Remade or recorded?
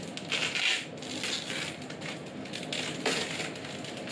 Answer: recorded